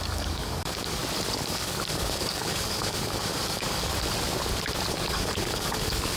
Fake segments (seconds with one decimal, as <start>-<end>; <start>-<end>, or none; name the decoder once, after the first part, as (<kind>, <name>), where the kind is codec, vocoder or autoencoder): 0.0-1.0 (codec, DAC); 1.5-3.9; 4.9-6.2

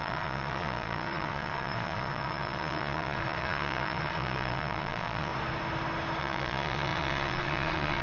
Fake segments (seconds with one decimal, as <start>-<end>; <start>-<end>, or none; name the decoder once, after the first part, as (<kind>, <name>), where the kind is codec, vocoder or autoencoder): 0.0-5.3 (vocoder, Vocos); 6.2-8.0

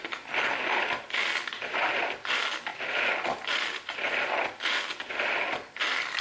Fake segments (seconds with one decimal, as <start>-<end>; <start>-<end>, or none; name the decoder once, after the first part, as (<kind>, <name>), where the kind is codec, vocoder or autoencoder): none

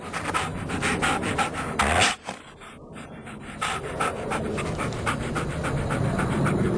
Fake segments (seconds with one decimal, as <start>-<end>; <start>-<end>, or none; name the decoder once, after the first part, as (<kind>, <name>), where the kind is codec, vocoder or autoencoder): none

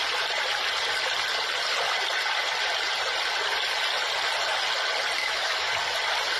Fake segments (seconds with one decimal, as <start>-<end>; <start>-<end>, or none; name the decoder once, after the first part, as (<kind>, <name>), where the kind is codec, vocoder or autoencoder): 5.2-5.7 (autoencoder, DAC-VAE)

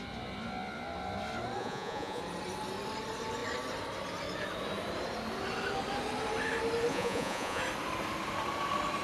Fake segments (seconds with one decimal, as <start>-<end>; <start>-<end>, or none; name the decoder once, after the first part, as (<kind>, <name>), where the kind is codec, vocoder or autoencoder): 1.6-2.2 (vocoder, Vocos); 6.9-7.6